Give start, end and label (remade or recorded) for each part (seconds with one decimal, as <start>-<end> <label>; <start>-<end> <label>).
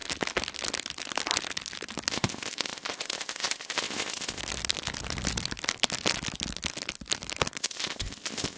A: 0.0-2.1 recorded; 2.1-4.4 remade; 4.4-7.6 recorded; 7.6-8.6 remade